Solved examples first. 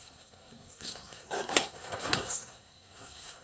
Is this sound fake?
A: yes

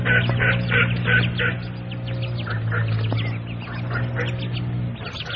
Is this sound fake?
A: no